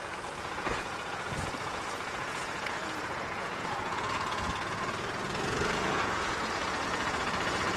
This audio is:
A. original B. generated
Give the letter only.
B